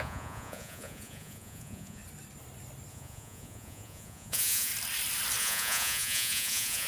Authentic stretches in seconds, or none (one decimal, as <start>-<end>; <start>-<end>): 2.0-2.9; 4.7-5.4